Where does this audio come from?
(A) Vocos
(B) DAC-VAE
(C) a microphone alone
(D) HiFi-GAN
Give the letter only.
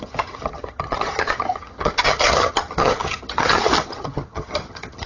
D